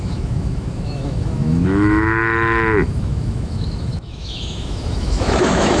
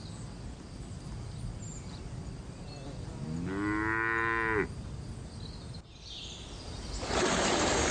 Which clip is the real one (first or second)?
second